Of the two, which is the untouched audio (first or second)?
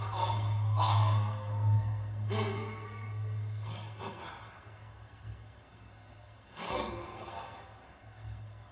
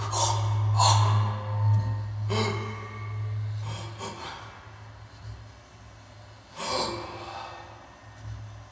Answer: second